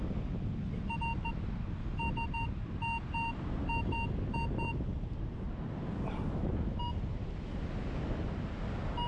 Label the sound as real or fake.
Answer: real